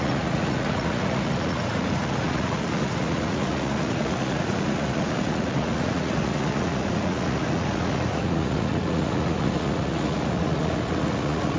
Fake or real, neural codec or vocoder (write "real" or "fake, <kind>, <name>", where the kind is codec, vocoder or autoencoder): fake, vocoder, Vocos